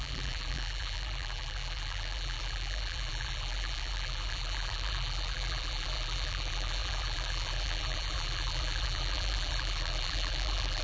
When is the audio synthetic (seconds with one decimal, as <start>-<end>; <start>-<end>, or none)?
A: 0.0-10.8

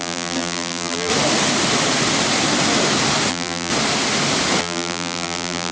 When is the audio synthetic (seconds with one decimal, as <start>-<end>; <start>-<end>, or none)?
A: 0.0-1.1; 3.3-3.7; 4.6-5.7

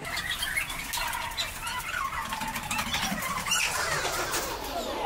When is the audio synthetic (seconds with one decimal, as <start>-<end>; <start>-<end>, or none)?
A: 1.6-5.1

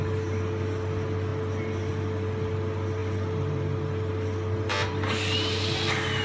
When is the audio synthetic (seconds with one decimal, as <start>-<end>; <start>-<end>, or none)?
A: none